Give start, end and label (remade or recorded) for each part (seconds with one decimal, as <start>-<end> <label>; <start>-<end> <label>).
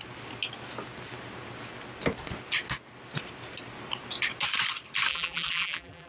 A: 0.0-5.1 recorded; 5.1-6.1 remade